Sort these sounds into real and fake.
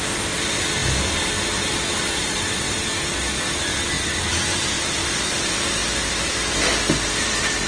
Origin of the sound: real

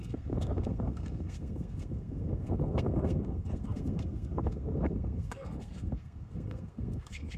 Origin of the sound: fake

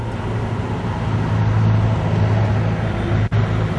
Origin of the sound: real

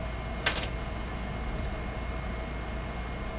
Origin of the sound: real